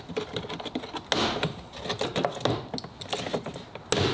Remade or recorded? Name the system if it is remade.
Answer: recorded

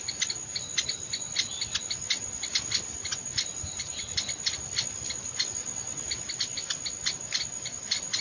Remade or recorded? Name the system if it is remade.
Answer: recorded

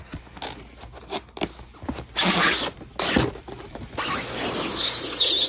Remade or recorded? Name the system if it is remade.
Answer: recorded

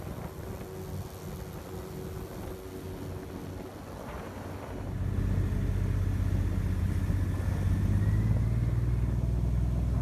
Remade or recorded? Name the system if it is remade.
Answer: recorded